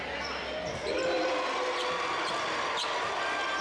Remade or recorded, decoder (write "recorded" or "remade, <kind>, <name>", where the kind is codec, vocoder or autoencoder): recorded